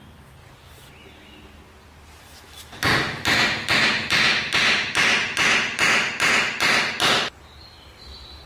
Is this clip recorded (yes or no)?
yes